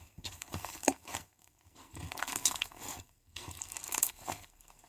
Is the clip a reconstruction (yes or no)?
yes